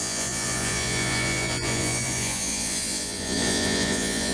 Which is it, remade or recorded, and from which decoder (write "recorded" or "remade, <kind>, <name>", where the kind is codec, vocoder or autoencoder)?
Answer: remade, vocoder, Vocos